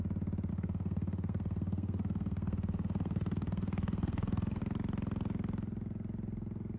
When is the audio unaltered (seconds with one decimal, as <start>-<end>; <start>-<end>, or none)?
0.0-0.5; 4.6-6.8